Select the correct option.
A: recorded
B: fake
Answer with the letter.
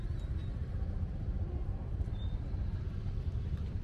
A